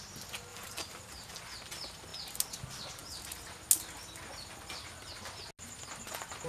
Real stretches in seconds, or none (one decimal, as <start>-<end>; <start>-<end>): 0.0-0.5; 1.3-6.5